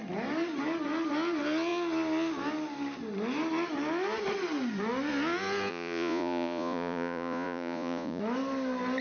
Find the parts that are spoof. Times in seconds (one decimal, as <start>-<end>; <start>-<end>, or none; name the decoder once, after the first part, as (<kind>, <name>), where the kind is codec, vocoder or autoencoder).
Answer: 5.7-8.2 (vocoder, Vocos)